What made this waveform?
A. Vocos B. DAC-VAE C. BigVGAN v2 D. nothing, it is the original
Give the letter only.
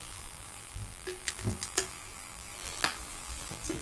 C